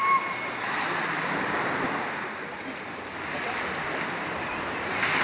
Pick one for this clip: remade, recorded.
recorded